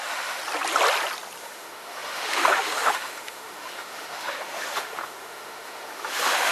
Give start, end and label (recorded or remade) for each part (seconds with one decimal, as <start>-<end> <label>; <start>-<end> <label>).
0.0-0.4 remade; 0.4-1.4 recorded; 1.4-6.5 remade

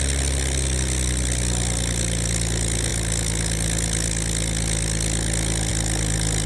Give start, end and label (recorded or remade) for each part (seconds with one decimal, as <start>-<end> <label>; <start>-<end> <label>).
0.0-6.5 recorded

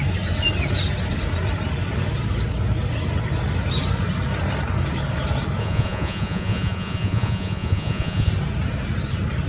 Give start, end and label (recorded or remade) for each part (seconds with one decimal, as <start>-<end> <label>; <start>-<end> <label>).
0.0-5.6 recorded; 5.6-8.3 remade; 8.3-9.5 recorded

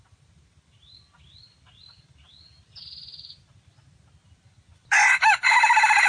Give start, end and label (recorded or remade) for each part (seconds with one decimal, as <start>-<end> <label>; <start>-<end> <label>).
0.0-6.1 recorded